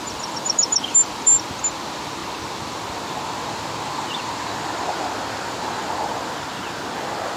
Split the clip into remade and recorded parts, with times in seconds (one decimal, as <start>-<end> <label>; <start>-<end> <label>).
0.0-7.4 recorded